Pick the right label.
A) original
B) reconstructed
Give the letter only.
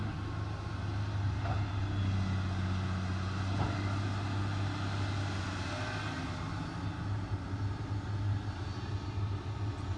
A